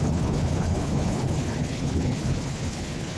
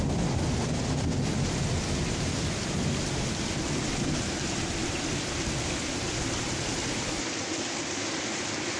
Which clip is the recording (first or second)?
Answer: second